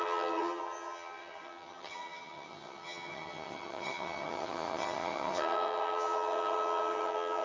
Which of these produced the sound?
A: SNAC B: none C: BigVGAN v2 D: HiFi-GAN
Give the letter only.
D